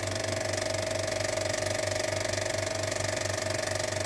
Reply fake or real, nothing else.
real